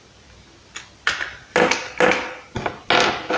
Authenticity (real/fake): real